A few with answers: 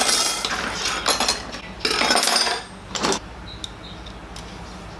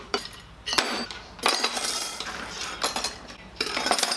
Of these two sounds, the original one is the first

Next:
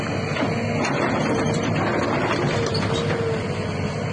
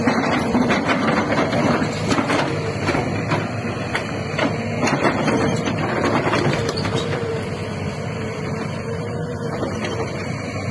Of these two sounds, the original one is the first